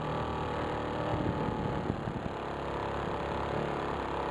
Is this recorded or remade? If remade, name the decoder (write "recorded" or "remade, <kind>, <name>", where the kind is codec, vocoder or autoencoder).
recorded